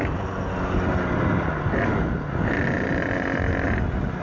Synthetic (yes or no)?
no